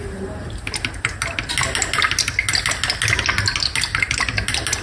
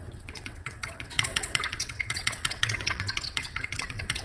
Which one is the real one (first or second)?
first